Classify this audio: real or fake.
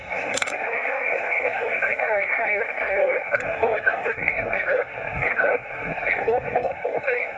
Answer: fake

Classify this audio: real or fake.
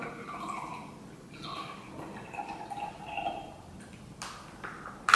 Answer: real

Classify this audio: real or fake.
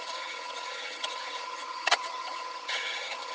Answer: fake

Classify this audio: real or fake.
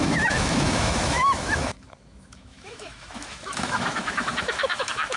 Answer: fake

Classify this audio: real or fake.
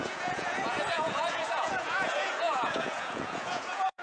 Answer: fake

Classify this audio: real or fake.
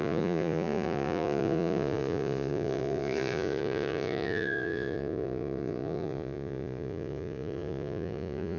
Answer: fake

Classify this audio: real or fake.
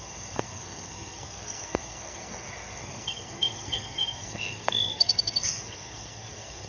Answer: fake